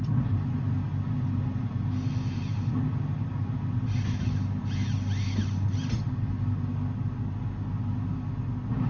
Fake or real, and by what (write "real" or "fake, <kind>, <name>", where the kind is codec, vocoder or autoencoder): real